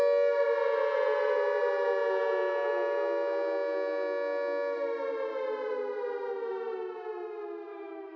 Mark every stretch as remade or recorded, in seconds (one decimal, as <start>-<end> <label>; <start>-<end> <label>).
0.0-7.7 recorded; 7.7-8.2 remade

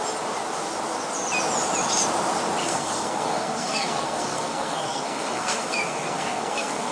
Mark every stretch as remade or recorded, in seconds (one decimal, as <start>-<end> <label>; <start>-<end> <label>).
0.0-2.6 recorded; 2.6-6.9 remade

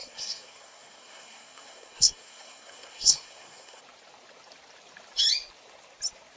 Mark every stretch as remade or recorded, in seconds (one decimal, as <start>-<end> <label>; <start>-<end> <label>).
0.0-3.8 remade; 3.8-6.4 recorded

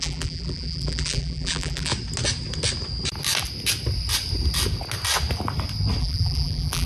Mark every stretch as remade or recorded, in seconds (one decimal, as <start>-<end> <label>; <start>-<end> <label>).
0.0-1.9 remade; 1.9-6.0 recorded; 6.0-6.9 remade

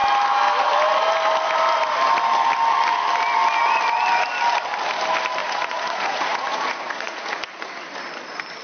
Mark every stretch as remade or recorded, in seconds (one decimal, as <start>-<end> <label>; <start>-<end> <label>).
0.0-5.4 recorded; 5.4-7.6 remade; 7.6-8.6 recorded